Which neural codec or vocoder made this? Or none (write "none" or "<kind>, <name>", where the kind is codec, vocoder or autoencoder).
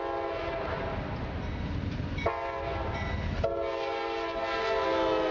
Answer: none